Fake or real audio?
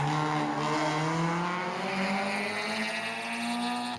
real